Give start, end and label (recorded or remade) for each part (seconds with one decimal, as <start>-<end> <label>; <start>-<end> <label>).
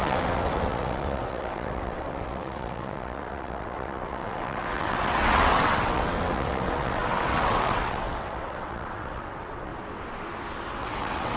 0.0-9.7 remade; 9.7-10.7 recorded; 10.7-11.4 remade